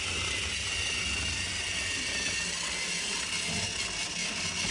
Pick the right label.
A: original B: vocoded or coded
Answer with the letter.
A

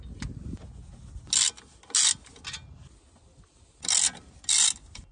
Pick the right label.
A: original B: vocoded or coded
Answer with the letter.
A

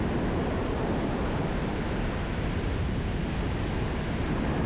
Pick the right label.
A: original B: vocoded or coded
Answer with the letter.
A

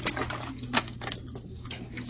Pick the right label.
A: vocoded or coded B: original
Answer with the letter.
B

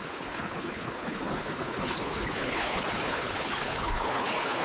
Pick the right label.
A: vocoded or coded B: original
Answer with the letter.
A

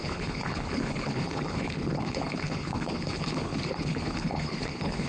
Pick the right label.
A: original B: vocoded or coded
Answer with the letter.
B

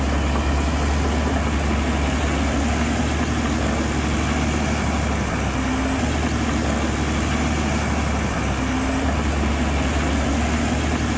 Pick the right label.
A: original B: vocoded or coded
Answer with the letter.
A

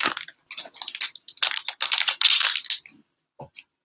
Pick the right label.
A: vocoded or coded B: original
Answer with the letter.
B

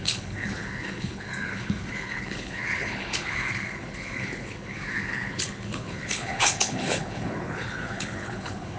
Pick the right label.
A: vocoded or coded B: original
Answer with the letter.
A